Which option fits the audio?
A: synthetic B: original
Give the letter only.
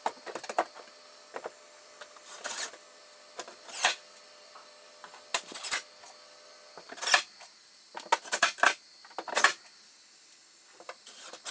B